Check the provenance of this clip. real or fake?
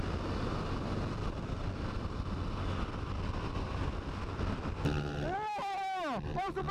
real